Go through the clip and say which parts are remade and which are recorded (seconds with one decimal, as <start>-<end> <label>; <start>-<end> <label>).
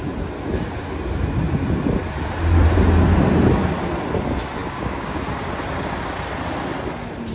0.0-4.6 recorded; 4.6-5.2 remade; 5.2-7.3 recorded